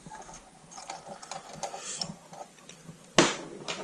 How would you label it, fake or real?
real